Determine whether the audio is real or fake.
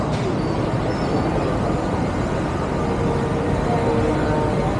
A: real